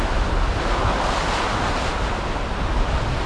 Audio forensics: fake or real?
real